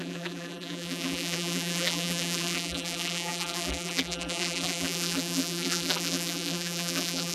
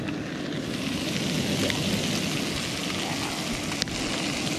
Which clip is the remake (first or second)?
first